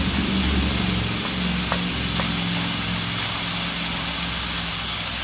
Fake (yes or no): no